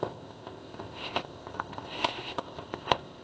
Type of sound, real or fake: fake